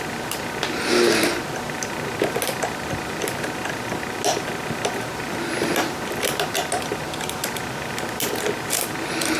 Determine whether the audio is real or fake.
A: real